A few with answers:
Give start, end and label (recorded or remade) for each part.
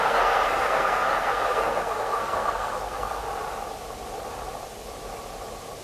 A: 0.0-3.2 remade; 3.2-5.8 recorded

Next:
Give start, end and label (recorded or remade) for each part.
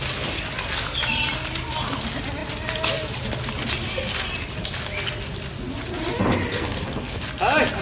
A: 0.0-6.5 recorded; 6.5-7.2 remade; 7.2-7.8 recorded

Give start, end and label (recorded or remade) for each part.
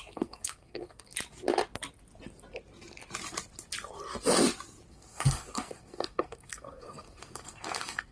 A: 0.0-1.1 remade; 1.1-4.9 recorded; 4.9-8.1 remade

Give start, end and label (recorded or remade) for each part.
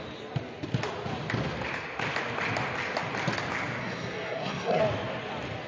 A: 0.0-3.8 recorded; 3.8-4.8 remade; 4.8-5.7 recorded